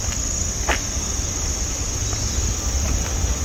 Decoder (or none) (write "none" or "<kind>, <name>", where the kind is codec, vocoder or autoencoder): none